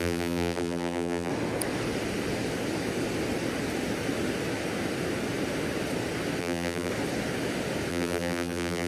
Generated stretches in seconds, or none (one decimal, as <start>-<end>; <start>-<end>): 0.0-1.3; 6.4-6.9; 7.9-8.9